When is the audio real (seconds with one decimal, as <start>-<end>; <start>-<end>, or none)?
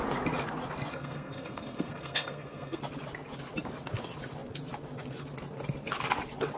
0.0-0.9; 2.8-6.6